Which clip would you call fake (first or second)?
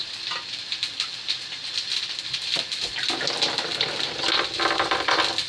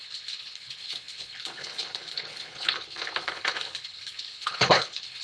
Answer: second